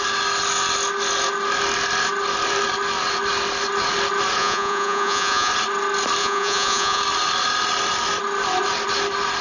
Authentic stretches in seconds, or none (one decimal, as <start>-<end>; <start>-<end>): 0.0-4.4; 5.5-6.2; 7.0-9.4

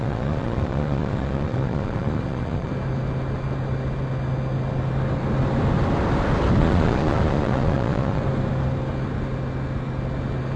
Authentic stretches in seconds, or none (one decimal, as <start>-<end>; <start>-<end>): 2.7-6.6; 8.2-10.6